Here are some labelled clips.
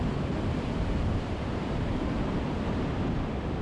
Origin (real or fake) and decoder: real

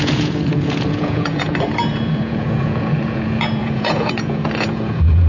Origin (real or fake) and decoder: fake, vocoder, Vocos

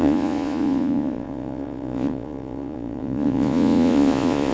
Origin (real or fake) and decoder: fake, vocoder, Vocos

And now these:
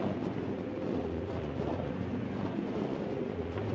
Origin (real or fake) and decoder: fake, vocoder, Vocos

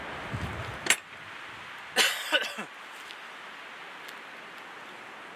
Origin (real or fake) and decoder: real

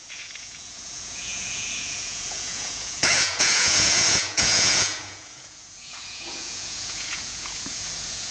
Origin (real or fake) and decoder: fake, vocoder, Vocos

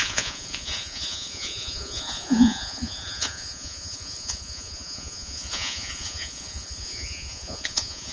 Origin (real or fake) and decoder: fake, vocoder, Vocos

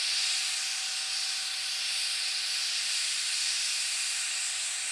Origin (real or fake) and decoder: real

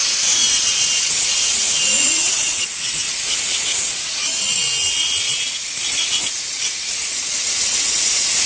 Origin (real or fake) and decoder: fake, vocoder, Vocos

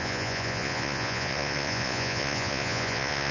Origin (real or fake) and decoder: fake, vocoder, Vocos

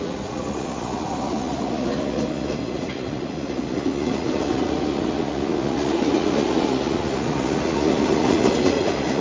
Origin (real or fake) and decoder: fake, vocoder, Vocos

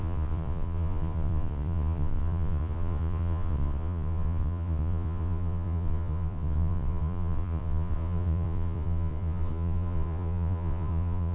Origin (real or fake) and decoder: fake, vocoder, Vocos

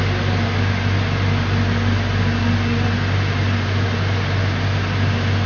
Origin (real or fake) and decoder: real